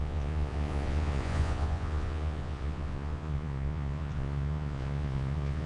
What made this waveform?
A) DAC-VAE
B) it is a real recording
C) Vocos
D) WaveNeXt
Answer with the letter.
C